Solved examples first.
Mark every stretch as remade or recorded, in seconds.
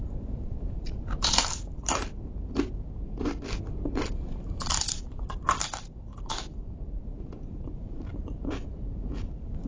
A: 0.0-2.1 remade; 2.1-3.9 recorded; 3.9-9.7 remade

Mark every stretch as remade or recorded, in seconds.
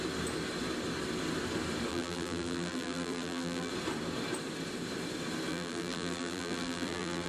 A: 0.0-1.9 recorded; 1.9-3.7 remade; 3.7-5.5 recorded; 5.5-7.3 remade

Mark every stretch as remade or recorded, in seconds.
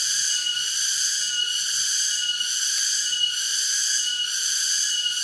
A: 0.0-3.8 remade; 3.8-4.3 recorded; 4.3-5.2 remade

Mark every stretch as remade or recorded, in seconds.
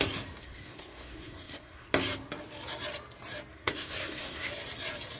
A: 0.0-0.4 recorded; 0.4-1.9 remade; 1.9-3.5 recorded; 3.5-4.5 remade; 4.5-5.2 recorded